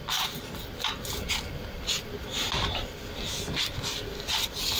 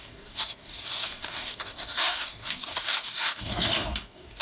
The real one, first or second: first